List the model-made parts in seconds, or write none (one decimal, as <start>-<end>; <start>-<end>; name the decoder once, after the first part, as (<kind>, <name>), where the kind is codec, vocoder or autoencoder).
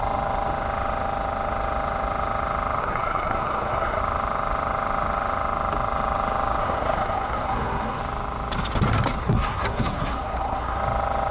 2.8-4.0 (codec, SNAC); 6.6-8.0; 9.2-10.8